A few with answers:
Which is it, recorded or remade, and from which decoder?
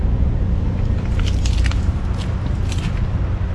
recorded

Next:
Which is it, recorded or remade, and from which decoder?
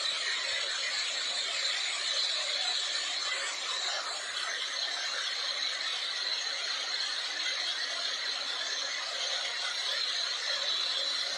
recorded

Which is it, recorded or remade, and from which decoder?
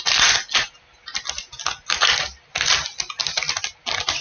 recorded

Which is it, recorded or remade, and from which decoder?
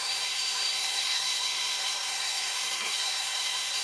remade, codec, SNAC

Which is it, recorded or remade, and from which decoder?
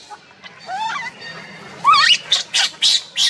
recorded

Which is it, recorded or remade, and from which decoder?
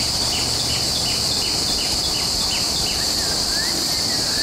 recorded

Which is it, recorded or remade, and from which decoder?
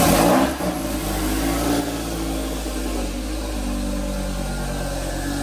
recorded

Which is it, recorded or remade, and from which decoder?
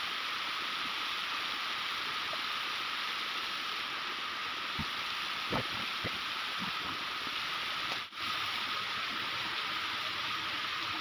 recorded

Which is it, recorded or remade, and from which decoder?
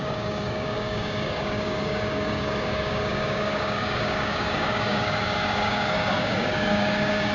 remade, codec, DAC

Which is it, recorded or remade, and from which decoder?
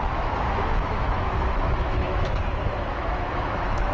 remade, autoencoder, DAC-VAE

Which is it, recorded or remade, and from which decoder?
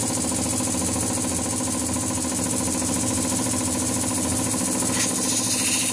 recorded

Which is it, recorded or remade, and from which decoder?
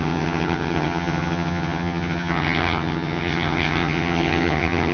remade, vocoder, HiFi-GAN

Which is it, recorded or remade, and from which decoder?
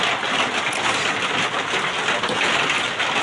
recorded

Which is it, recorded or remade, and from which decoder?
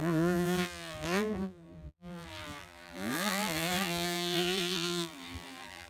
remade, vocoder, BigVGAN v2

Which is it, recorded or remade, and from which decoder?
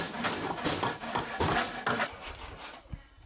recorded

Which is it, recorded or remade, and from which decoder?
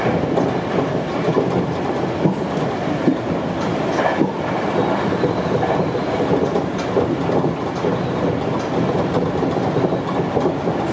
recorded